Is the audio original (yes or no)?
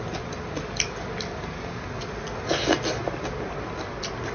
yes